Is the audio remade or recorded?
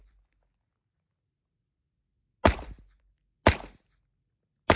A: recorded